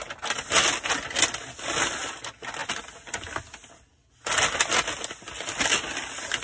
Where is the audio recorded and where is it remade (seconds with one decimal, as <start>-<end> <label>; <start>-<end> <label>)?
0.0-6.4 recorded